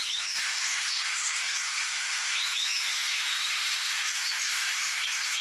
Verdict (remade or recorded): remade